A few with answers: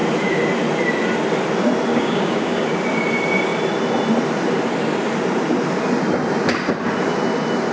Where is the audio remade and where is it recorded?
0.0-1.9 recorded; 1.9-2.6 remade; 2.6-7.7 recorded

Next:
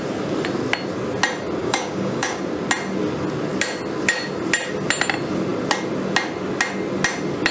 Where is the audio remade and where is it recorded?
0.0-1.6 recorded; 1.6-2.4 remade; 2.4-7.5 recorded

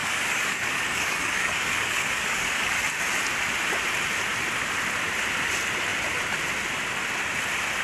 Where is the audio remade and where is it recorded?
0.0-2.7 remade; 2.7-7.8 recorded

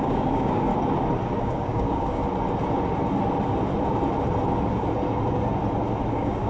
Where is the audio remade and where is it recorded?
0.0-0.7 remade; 0.7-1.4 recorded; 1.4-2.2 remade; 2.2-6.1 recorded; 6.1-6.5 remade

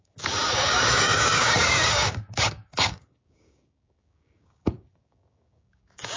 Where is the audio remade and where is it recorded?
0.0-6.2 remade